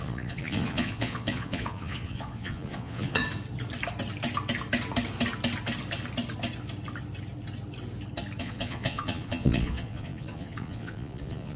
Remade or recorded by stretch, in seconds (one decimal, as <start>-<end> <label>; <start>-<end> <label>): 0.0-3.2 remade; 3.2-8.4 recorded; 8.4-11.6 remade